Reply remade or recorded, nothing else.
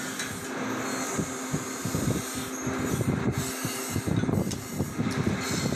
recorded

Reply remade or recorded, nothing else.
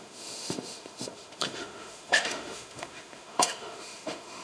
remade